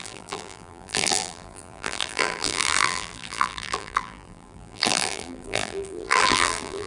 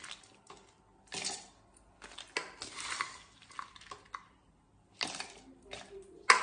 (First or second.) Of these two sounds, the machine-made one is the first